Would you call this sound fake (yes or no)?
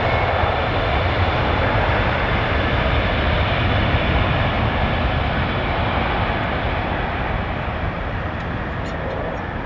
no